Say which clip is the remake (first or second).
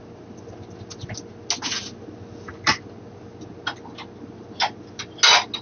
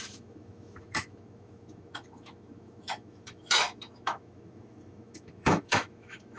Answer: second